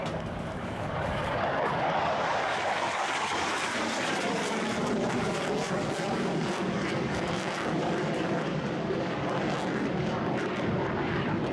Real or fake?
fake